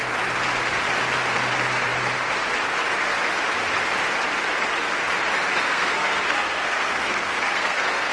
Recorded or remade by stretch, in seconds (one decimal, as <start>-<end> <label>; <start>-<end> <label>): 0.0-5.7 recorded; 5.7-8.1 remade